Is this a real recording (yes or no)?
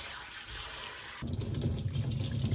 yes